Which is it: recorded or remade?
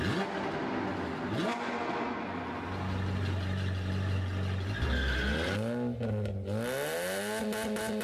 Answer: recorded